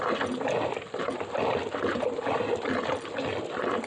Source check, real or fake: real